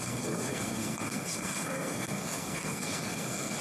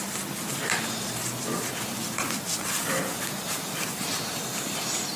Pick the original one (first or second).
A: second